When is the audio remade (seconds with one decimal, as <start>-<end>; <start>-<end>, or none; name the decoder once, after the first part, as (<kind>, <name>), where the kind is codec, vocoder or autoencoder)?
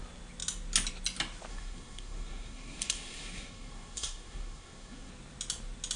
1.5-5.1 (codec, SNAC)